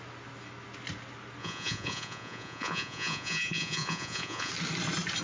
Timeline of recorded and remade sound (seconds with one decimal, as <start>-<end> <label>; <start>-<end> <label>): 0.0-1.4 recorded; 1.4-4.5 remade; 4.5-5.2 recorded